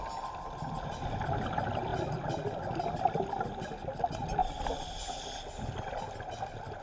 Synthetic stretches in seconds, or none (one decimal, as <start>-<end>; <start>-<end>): none